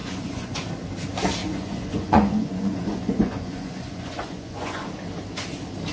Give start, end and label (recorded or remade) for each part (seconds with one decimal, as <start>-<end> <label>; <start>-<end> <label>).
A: 0.0-0.7 remade; 0.7-1.4 recorded; 1.4-4.9 remade; 4.9-5.9 recorded